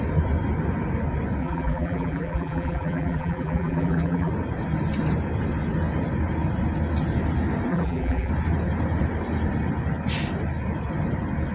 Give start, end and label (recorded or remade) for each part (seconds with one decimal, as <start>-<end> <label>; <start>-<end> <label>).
0.0-1.4 recorded; 1.4-4.3 remade; 4.3-7.7 recorded; 7.7-8.3 remade; 8.3-11.5 recorded